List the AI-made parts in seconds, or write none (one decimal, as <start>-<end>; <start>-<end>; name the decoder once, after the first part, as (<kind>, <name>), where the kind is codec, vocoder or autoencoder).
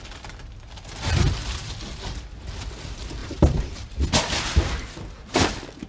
3.2-4.0 (vocoder, BigVGAN v2)